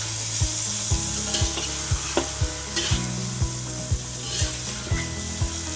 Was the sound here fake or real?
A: real